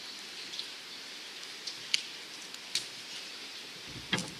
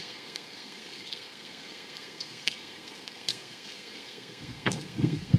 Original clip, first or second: first